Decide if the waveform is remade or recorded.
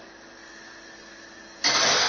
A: recorded